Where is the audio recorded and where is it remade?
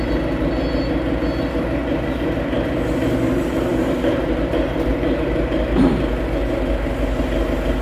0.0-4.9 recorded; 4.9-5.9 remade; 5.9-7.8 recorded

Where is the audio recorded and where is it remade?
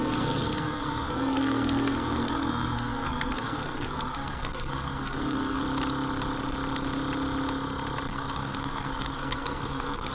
0.0-5.6 remade; 5.6-8.1 recorded; 8.1-10.1 remade